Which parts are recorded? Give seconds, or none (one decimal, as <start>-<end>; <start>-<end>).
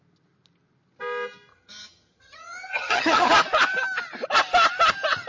0.0-1.5; 3.3-5.3